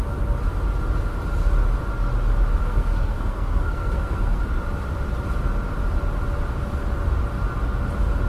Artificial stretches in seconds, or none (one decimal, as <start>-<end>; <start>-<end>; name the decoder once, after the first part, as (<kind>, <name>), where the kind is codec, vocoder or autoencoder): 2.6-4.4 (codec, SNAC)